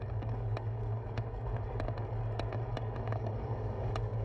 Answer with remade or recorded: remade